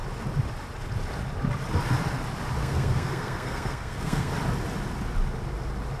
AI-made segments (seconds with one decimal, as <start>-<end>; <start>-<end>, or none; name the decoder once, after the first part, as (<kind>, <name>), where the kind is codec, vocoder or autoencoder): 2.6-4.3 (codec, SNAC)